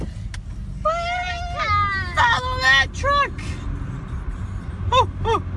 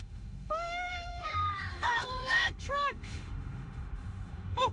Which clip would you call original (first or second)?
first